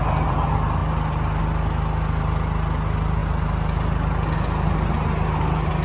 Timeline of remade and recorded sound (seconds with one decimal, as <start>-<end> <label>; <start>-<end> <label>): 0.0-5.8 recorded